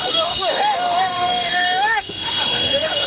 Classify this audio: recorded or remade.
remade